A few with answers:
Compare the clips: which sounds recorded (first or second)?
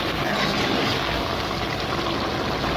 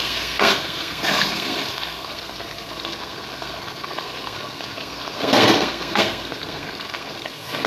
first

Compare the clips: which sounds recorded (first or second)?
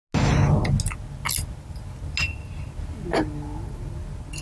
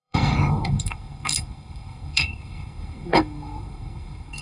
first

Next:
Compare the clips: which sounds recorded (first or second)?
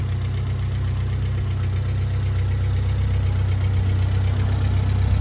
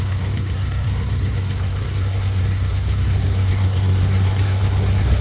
first